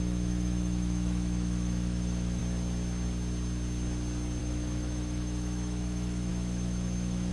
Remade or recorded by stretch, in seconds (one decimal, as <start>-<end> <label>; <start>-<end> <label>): 0.0-2.4 remade; 2.4-4.4 recorded; 4.4-7.3 remade